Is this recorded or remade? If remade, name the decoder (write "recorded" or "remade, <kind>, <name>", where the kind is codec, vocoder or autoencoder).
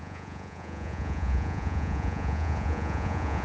remade, vocoder, Vocos